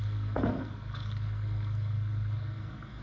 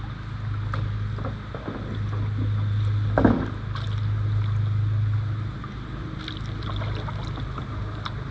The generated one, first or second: first